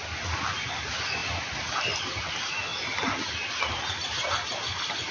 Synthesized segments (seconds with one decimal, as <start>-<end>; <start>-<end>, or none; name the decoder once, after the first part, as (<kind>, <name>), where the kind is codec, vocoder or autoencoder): none